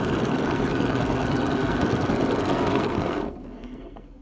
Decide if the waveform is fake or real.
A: fake